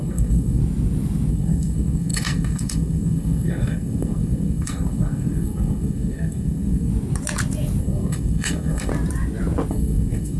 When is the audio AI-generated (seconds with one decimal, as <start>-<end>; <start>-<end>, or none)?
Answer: 0.0-0.6; 1.3-6.9; 7.8-8.9; 9.7-10.4